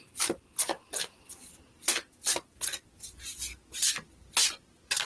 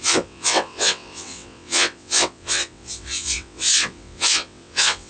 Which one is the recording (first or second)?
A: first